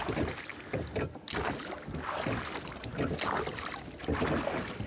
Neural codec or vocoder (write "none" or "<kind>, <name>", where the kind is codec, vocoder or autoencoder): none